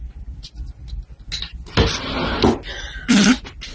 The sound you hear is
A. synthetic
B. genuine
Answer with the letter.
B